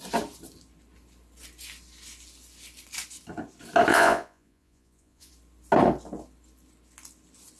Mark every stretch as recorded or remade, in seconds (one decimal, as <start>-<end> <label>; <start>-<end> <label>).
0.0-3.9 recorded; 3.9-5.3 remade; 5.3-7.6 recorded